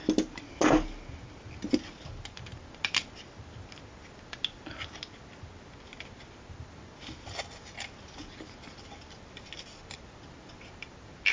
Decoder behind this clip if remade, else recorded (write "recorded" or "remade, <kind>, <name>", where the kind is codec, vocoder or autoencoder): recorded